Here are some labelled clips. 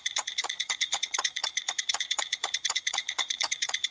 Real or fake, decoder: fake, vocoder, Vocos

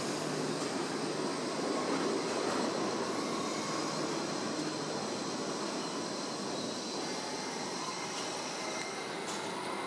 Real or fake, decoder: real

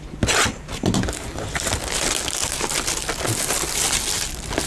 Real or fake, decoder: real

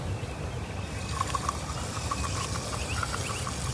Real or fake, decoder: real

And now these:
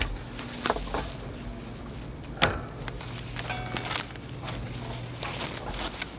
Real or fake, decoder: real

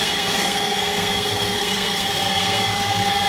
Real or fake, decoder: fake, codec, SNAC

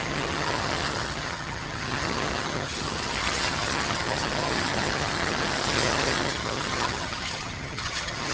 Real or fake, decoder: fake, vocoder, HiFi-GAN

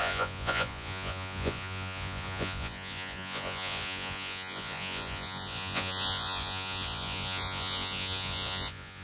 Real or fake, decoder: fake, vocoder, Vocos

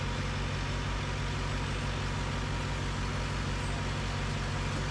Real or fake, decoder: real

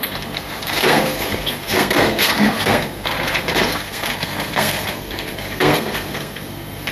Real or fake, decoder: fake, codec, SNAC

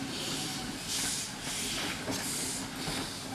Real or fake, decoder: real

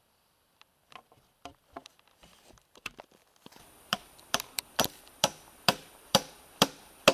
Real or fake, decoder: fake, vocoder, BigVGAN v2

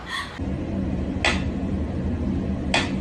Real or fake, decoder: real